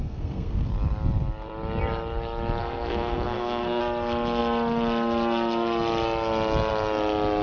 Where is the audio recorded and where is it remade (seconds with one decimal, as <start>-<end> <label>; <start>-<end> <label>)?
0.0-0.7 remade; 0.7-2.6 recorded; 2.6-3.8 remade; 3.8-7.4 recorded